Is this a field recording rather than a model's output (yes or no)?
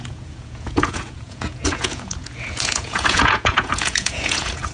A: no